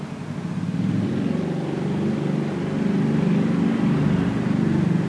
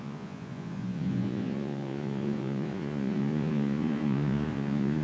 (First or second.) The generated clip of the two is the second